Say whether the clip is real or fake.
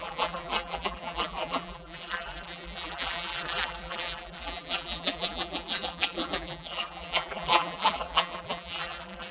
fake